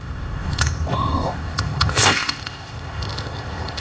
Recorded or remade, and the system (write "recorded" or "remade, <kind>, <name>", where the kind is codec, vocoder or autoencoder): remade, codec, ZipCodec